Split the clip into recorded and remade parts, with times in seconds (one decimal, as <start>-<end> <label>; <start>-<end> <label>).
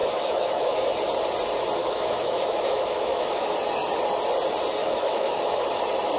0.0-1.0 remade; 1.0-1.8 recorded; 1.8-3.5 remade; 3.5-4.8 recorded; 4.8-5.8 remade; 5.8-6.2 recorded